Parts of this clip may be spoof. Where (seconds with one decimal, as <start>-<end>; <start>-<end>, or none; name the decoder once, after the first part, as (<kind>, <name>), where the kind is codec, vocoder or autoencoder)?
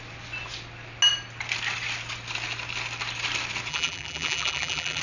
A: 3.7-5.0 (vocoder, BigVGAN v2)